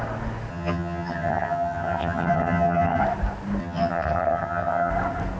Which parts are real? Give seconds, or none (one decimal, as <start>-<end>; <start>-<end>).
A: 0.0-0.5; 3.0-3.6; 4.9-5.4